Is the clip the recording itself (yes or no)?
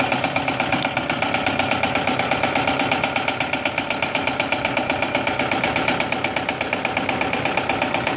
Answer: no